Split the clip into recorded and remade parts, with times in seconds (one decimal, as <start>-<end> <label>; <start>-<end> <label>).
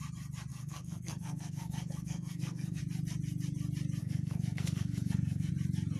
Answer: 0.0-0.5 recorded; 0.5-2.8 remade; 2.8-4.0 recorded; 4.0-5.5 remade; 5.5-6.0 recorded